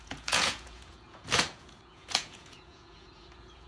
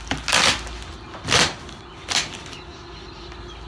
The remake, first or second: first